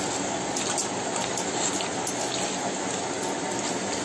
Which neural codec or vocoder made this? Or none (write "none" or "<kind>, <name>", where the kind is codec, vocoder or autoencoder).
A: none